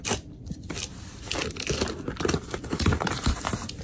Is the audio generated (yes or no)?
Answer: yes